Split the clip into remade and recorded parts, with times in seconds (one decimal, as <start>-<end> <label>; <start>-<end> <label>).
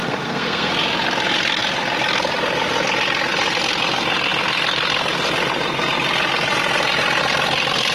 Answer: 0.0-0.7 remade; 0.7-7.9 recorded